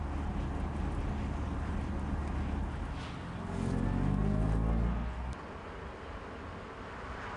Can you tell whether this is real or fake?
real